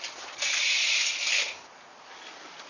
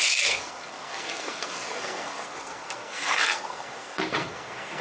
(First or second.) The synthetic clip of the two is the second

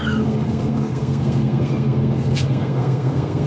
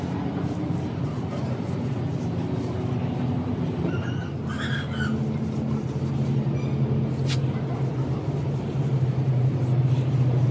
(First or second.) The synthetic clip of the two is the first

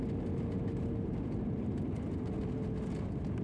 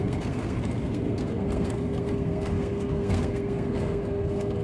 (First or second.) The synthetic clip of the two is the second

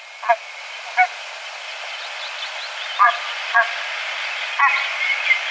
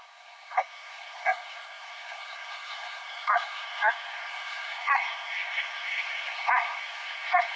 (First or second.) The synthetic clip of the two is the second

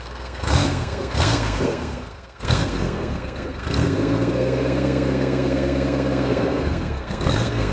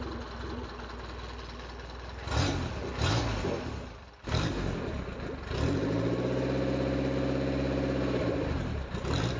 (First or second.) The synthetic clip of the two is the first